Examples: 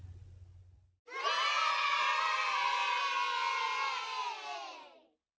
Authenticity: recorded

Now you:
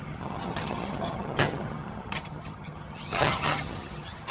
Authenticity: remade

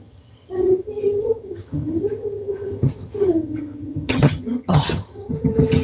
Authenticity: remade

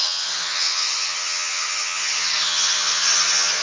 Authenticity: remade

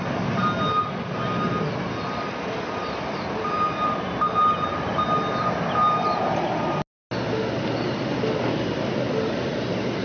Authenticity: recorded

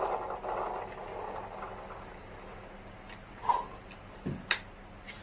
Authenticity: recorded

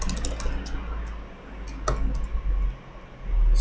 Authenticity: recorded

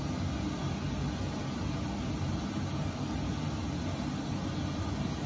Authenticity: recorded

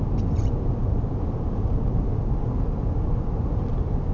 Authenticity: recorded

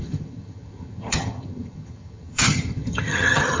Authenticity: remade